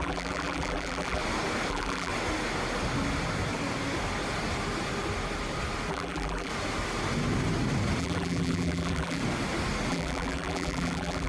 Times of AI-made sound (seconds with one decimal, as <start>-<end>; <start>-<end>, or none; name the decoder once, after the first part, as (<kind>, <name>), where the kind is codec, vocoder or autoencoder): 0.0-1.2 (vocoder, BigVGAN v2); 1.7-2.1; 5.9-6.5; 8.0-9.2; 9.9-11.3